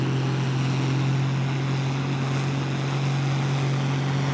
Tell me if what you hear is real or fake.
real